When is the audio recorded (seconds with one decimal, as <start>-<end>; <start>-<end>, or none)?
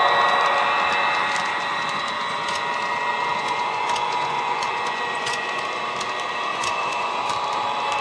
0.0-1.5; 5.6-6.5; 7.3-8.0